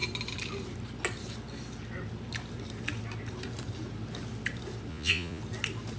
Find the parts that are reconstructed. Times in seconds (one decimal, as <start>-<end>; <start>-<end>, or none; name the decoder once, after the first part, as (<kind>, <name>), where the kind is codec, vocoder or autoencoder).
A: 4.9-5.4 (vocoder, Vocos)